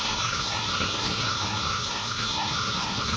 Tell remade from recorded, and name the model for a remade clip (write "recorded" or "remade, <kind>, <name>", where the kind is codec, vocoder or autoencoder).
remade, codec, SNAC